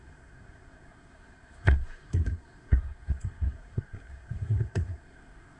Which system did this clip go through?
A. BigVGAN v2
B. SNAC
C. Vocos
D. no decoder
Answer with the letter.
B